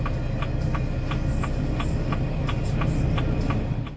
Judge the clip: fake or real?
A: real